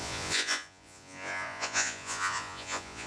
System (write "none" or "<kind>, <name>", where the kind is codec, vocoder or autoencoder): vocoder, Vocos